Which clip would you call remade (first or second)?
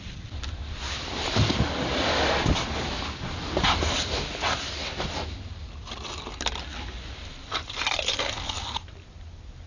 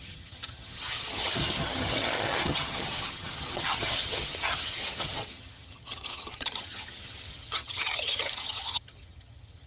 second